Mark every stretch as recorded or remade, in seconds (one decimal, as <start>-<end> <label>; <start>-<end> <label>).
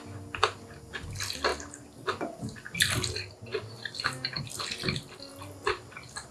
0.0-6.3 recorded